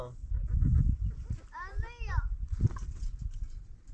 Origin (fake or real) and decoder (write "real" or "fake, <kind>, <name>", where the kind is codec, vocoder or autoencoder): real